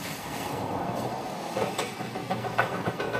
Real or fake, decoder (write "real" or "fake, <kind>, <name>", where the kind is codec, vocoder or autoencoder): fake, codec, SNAC